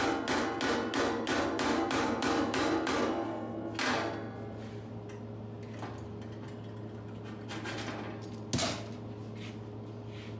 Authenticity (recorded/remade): recorded